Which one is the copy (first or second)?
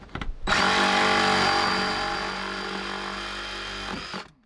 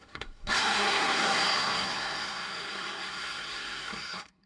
second